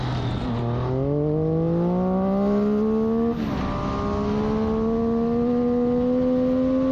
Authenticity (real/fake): real